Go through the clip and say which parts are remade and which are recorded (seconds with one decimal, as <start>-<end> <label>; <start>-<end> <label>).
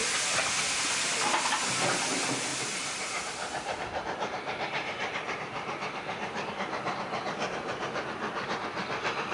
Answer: 0.0-2.5 recorded; 2.5-6.5 remade; 6.5-9.3 recorded